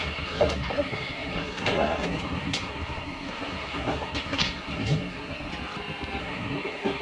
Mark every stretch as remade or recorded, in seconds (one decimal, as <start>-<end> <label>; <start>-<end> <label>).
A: 0.0-5.5 remade; 5.5-6.2 recorded; 6.2-7.0 remade